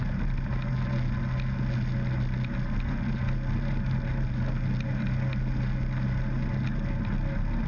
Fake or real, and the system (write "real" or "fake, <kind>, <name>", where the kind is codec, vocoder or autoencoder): real